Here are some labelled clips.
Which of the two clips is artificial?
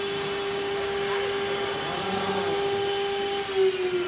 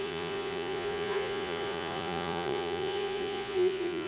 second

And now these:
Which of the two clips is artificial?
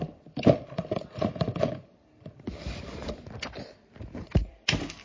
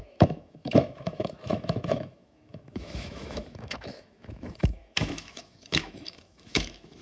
second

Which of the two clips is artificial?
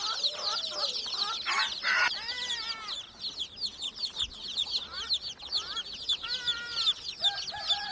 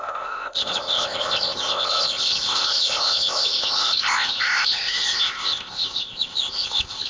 second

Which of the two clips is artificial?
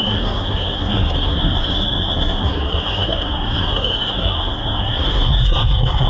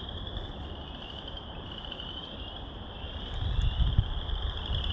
first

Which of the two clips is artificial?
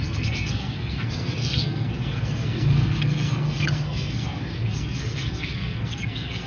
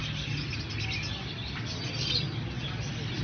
first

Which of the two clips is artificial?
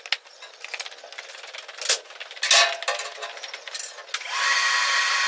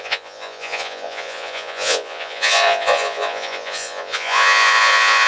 second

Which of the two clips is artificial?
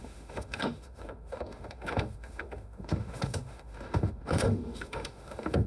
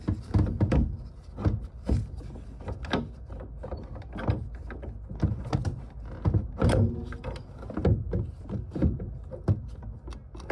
first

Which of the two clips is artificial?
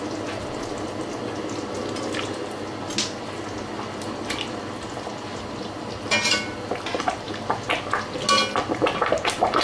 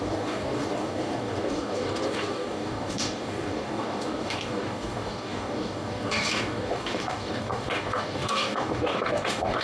second